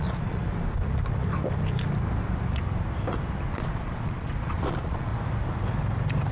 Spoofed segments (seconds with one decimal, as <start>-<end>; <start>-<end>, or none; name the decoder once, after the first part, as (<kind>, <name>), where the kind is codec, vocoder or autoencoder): 0.0-0.4 (vocoder, Vocos); 3.6-5.1